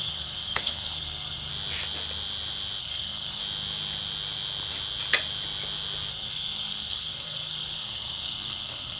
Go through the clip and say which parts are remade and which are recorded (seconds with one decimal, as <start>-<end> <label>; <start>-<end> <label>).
0.0-1.5 remade; 1.5-2.8 recorded; 2.8-3.4 remade; 3.4-6.1 recorded; 6.1-9.0 remade